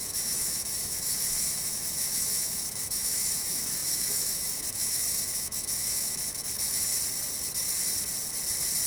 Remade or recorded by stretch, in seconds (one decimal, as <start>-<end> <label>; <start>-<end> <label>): 0.0-6.9 remade; 6.9-8.9 recorded